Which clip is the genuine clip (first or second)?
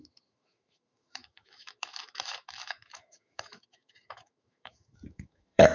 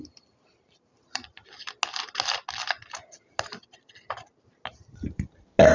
second